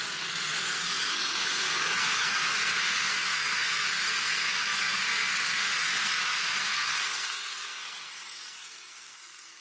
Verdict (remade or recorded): remade